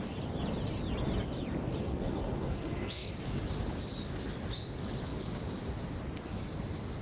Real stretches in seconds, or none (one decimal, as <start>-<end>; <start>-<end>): 0.0-1.8; 3.1-7.0